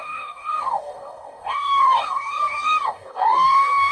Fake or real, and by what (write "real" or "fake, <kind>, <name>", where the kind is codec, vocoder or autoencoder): fake, codec, DAC